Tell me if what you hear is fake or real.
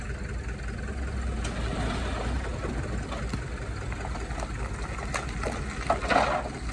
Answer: real